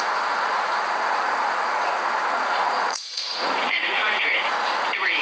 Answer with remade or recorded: remade